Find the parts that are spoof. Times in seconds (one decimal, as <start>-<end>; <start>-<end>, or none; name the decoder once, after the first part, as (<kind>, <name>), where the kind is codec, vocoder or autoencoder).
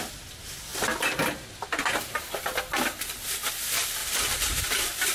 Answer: 4.0-4.6 (vocoder, BigVGAN v2)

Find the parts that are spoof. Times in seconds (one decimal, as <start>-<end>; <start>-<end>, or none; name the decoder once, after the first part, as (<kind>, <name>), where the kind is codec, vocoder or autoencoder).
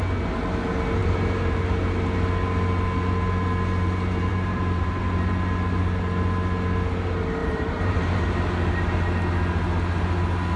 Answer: 1.0-1.6 (vocoder, BigVGAN v2); 4.3-5.0; 7.4-8.2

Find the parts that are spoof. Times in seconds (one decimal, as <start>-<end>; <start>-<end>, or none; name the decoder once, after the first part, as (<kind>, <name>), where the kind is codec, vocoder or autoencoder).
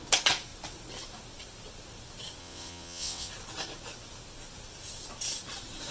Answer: 2.4-3.3 (vocoder, WaveNeXt)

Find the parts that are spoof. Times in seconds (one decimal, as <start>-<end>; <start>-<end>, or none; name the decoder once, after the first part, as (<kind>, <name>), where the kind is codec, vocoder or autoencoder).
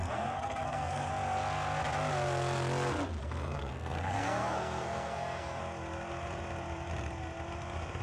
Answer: 0.0-1.1 (codec, SNAC); 3.2-5.6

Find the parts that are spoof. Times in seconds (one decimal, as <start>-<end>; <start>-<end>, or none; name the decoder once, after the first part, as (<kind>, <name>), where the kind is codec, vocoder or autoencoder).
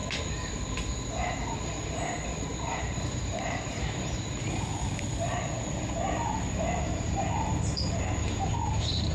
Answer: 2.8-4.7 (vocoder, BigVGAN v2); 6.8-9.1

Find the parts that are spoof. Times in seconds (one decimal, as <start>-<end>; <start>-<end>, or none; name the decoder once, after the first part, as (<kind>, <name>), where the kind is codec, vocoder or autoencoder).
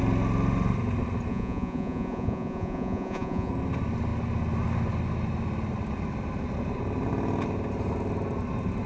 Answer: 1.3-3.5 (vocoder, Vocos)